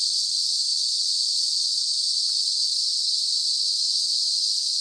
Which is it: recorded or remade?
recorded